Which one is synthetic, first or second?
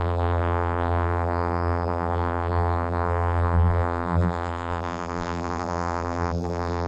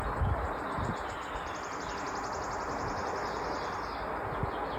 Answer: first